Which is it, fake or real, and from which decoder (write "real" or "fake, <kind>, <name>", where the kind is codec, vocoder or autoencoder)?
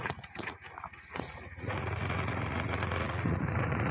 fake, vocoder, Vocos